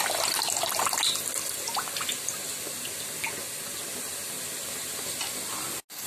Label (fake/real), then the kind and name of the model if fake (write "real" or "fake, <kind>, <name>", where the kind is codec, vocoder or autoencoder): real